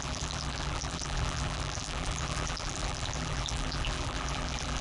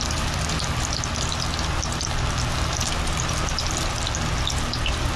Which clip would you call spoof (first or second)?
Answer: first